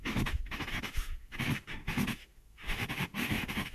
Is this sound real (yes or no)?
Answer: no